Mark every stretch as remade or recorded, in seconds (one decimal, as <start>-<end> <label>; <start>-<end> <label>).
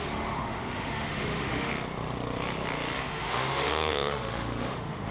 0.0-1.7 remade; 1.7-3.1 recorded; 3.1-5.1 remade